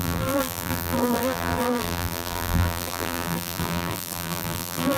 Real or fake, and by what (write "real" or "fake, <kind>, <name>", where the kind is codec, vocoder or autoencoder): fake, vocoder, BigVGAN v2